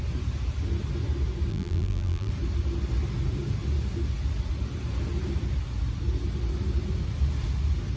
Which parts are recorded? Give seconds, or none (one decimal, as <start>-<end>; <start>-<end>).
0.0-1.5; 2.3-8.0